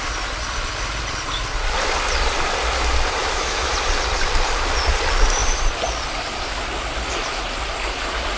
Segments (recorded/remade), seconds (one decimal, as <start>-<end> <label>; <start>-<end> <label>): 0.0-3.2 recorded; 3.2-3.7 remade; 3.7-8.4 recorded